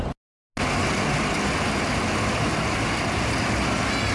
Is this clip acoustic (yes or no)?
yes